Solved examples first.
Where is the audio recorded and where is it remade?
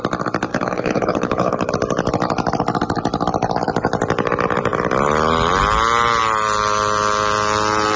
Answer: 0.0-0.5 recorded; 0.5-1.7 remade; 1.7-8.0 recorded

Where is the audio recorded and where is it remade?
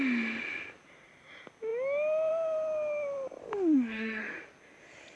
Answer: 0.0-3.4 recorded; 3.4-4.2 remade; 4.2-5.2 recorded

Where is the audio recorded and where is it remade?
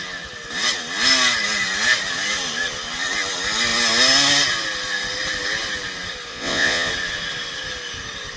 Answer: 0.0-6.3 recorded; 6.3-6.9 remade; 6.9-8.4 recorded